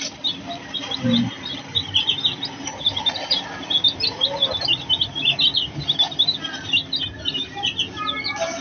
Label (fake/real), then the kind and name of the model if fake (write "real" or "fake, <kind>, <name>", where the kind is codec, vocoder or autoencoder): real